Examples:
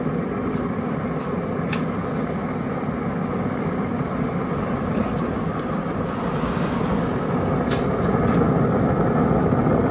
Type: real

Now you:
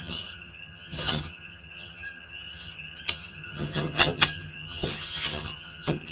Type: fake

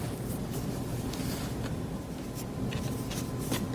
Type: real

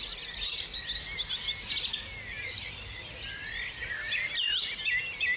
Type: real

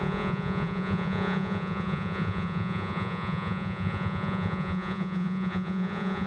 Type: fake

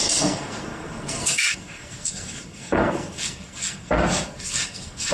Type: fake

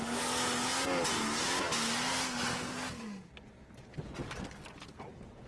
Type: real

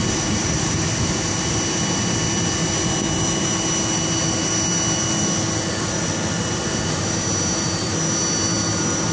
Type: real